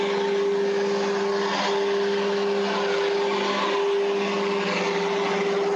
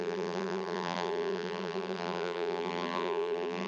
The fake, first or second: second